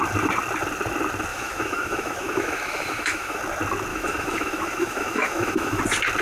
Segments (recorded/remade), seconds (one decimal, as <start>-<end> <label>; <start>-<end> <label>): 0.0-1.3 recorded; 1.3-3.4 remade; 3.4-3.9 recorded; 3.9-5.8 remade; 5.8-6.2 recorded